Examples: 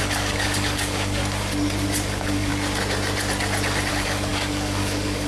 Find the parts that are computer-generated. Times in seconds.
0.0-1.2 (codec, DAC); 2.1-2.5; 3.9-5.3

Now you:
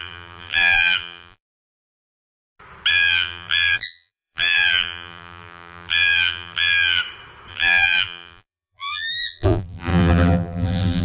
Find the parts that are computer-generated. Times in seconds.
0.0-2.0 (vocoder, BigVGAN v2); 2.9-7.0; 7.5-11.0

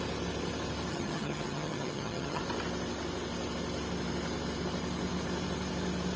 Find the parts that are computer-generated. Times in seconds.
0.9-2.4 (vocoder, HiFi-GAN)

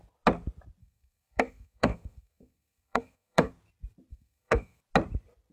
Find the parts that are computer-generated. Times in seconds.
0.8-3.5 (codec, SNAC); 4.1-4.8